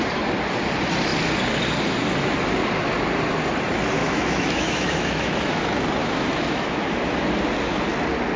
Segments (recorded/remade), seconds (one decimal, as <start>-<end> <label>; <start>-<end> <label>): 0.0-4.0 recorded; 4.0-5.6 remade; 5.6-6.0 recorded; 6.0-7.0 remade; 7.0-8.4 recorded